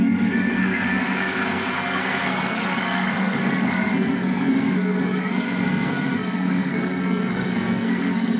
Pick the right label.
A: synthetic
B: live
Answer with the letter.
A